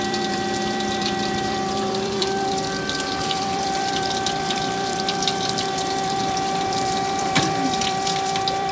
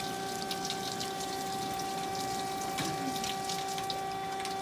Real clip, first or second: second